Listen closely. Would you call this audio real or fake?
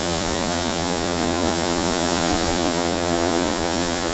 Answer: fake